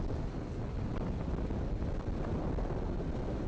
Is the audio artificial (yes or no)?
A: no